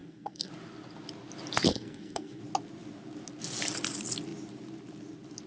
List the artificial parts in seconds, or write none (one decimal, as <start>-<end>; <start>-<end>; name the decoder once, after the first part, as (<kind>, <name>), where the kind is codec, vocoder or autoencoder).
0.0-0.5 (codec, SNAC); 1.7-2.4